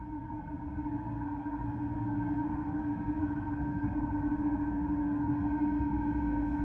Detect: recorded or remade remade